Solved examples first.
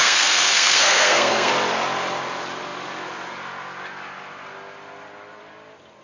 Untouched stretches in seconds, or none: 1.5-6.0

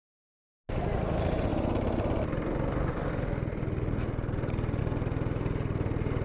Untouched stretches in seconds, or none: 0.0-6.2

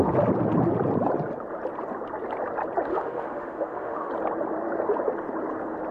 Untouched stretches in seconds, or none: 0.0-2.9; 4.1-5.9

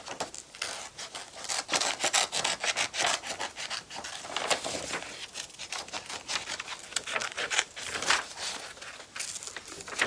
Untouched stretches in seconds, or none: 0.0-7.2; 8.6-10.1

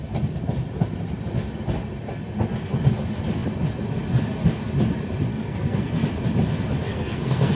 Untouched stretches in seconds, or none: 0.0-5.3; 6.0-6.9